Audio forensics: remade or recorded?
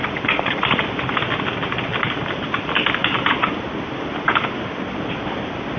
recorded